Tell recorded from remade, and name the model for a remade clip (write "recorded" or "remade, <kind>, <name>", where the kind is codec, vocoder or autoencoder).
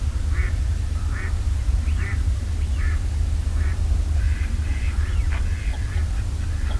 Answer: recorded